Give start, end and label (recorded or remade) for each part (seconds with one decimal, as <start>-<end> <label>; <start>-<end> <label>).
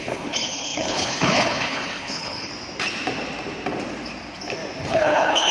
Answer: 0.0-2.5 remade; 2.5-4.9 recorded; 4.9-5.5 remade